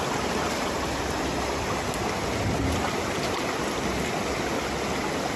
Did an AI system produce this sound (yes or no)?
no